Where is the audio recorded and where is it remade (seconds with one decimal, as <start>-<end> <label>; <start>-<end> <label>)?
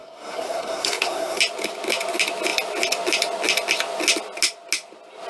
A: 0.0-1.4 remade; 1.4-5.3 recorded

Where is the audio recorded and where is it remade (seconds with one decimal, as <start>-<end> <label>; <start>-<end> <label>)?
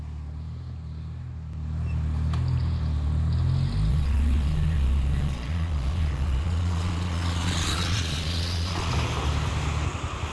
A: 0.0-3.9 recorded; 3.9-8.9 remade; 8.9-10.3 recorded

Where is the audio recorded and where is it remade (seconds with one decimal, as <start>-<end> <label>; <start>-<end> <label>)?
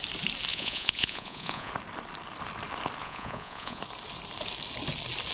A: 0.0-0.5 recorded; 0.5-1.7 remade; 1.7-3.0 recorded; 3.0-3.8 remade; 3.8-5.3 recorded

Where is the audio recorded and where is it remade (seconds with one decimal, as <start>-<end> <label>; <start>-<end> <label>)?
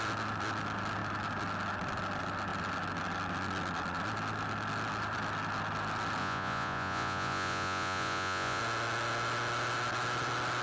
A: 0.0-6.2 recorded; 6.2-8.6 remade; 8.6-10.6 recorded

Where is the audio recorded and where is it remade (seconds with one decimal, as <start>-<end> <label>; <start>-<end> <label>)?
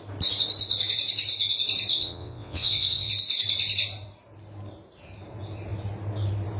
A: 0.0-1.9 recorded; 1.9-3.1 remade; 3.1-6.6 recorded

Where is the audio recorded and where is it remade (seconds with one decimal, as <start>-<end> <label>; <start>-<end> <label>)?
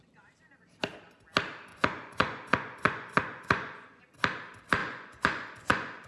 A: 0.0-1.7 recorded; 1.7-4.0 remade; 4.0-4.8 recorded; 4.8-6.1 remade